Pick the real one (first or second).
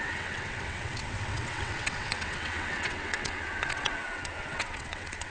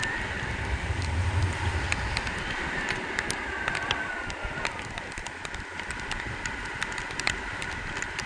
second